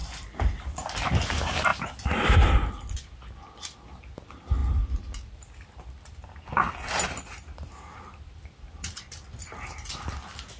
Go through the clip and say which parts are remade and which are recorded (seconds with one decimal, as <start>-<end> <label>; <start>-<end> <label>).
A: 0.0-0.6 remade; 0.6-4.6 recorded; 4.6-9.1 remade; 9.1-10.6 recorded